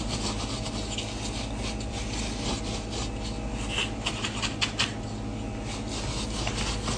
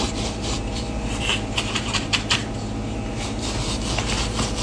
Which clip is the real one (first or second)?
first